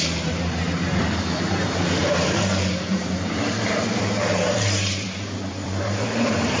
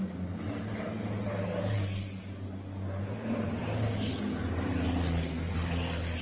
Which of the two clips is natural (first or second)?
second